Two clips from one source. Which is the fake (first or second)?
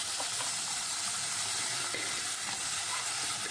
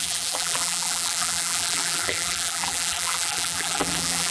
second